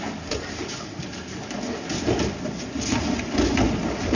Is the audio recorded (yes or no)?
yes